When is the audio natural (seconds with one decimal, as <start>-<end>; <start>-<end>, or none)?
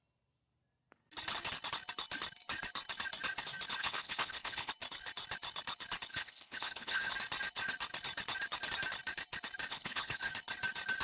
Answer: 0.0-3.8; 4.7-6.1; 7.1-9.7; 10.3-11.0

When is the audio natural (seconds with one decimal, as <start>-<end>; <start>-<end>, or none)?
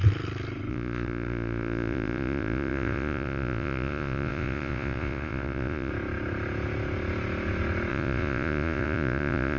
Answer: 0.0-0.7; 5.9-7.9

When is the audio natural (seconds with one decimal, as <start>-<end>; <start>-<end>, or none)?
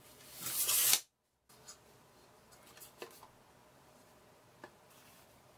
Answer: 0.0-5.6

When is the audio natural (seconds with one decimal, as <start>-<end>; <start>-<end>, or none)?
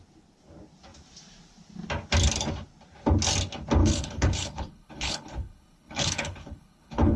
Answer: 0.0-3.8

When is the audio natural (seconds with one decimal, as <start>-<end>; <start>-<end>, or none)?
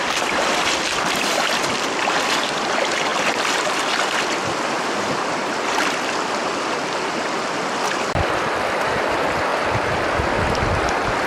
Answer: 3.1-5.2; 6.4-7.7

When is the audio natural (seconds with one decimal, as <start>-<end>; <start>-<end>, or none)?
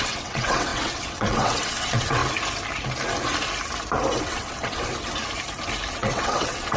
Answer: 2.2-4.2; 4.9-5.9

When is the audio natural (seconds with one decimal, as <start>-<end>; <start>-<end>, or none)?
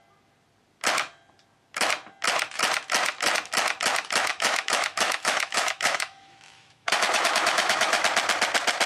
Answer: 0.0-4.3; 8.0-8.9